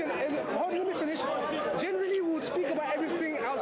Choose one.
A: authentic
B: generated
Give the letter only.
A